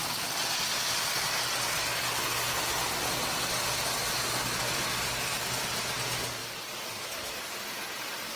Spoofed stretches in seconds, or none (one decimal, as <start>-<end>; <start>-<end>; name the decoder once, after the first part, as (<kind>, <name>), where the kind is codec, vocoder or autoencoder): none